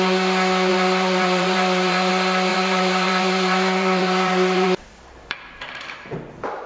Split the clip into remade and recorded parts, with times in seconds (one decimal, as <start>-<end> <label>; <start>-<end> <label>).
0.0-0.7 recorded; 0.7-2.1 remade; 2.1-2.5 recorded; 2.5-6.2 remade; 6.2-6.7 recorded